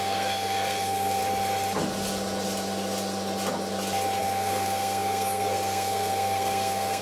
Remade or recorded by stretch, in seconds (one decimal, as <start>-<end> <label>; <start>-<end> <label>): 0.0-1.2 remade; 1.2-4.2 recorded; 4.2-7.0 remade